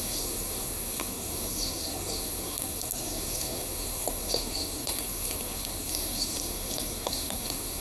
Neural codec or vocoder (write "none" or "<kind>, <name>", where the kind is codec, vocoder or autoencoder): codec, SNAC